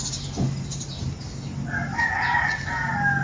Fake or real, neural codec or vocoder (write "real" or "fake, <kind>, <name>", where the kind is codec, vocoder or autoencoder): real